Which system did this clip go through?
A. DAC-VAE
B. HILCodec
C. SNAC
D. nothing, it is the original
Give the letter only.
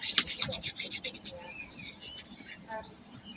D